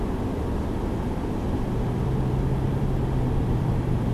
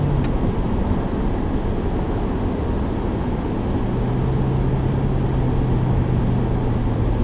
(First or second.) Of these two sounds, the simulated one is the first